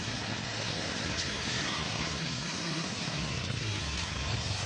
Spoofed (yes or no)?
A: yes